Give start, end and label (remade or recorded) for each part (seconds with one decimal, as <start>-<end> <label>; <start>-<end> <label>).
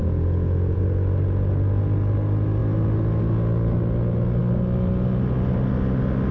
0.0-0.8 remade; 0.8-6.3 recorded